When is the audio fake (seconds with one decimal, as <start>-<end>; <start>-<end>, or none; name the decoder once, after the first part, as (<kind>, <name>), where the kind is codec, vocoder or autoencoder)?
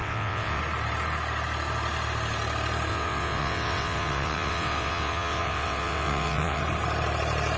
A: 0.0-0.6 (vocoder, WaveNeXt); 2.9-6.6